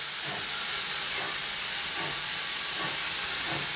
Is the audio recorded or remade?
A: recorded